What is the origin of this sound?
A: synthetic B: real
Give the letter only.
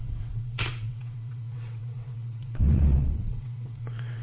A